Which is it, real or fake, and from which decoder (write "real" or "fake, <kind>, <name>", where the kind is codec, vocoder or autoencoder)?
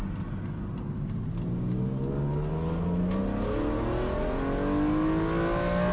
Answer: real